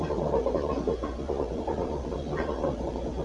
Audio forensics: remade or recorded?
remade